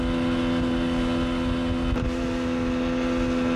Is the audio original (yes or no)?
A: yes